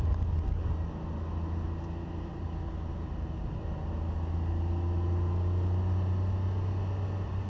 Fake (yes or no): no